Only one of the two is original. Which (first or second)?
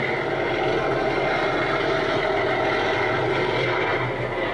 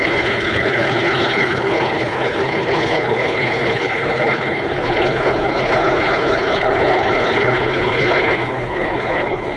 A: first